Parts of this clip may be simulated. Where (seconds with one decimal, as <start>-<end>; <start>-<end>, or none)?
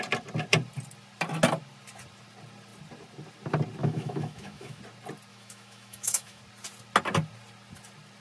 3.8-4.8; 5.3-6.4